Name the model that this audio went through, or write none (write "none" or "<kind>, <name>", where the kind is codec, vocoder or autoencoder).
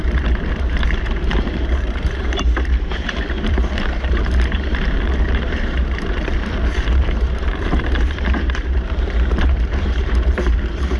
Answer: vocoder, BigVGAN v2